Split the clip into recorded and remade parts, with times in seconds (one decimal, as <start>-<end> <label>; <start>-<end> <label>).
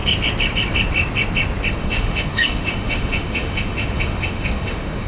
0.0-1.7 recorded; 1.7-5.1 remade